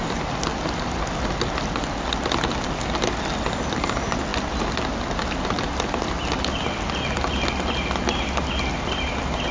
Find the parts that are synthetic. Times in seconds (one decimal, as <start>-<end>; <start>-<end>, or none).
none